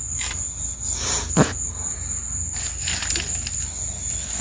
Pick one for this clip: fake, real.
real